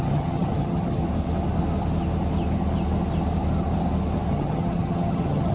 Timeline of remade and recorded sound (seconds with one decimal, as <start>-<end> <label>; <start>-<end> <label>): 0.0-1.0 remade; 1.0-4.3 recorded; 4.3-5.5 remade